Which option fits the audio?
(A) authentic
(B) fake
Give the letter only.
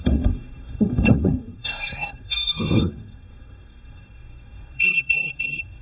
B